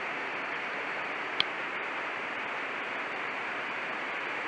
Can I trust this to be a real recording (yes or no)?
no